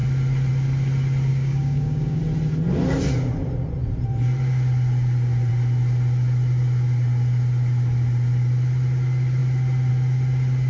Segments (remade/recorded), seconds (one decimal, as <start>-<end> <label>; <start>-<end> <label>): 0.0-1.3 recorded; 1.3-2.2 remade; 2.2-10.7 recorded